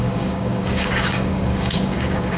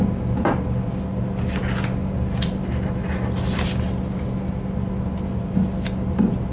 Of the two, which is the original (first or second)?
second